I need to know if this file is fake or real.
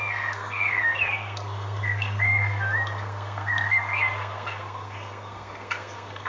fake